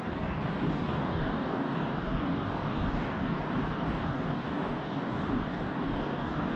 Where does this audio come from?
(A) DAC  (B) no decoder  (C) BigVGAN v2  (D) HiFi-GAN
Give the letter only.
A